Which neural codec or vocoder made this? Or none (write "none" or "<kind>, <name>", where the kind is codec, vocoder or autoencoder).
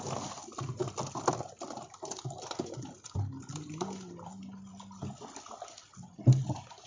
none